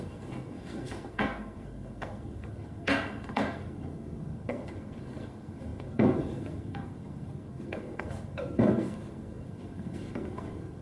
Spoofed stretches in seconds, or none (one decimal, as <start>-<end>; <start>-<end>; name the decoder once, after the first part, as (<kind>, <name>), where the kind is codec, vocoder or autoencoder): 0.0-10.8 (codec, SNAC)